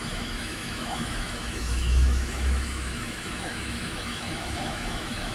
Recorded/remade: remade